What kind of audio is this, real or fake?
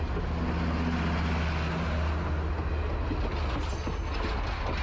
real